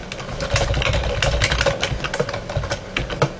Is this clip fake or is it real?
real